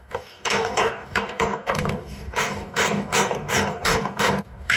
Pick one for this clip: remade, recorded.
remade